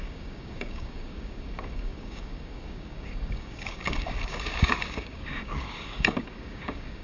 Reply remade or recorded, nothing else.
remade